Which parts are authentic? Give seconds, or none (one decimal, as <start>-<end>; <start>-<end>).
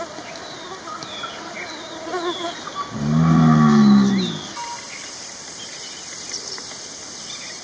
0.0-7.6